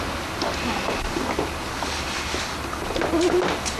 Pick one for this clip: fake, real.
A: real